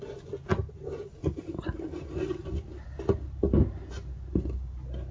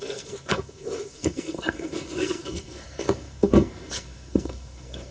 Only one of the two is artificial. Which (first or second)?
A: second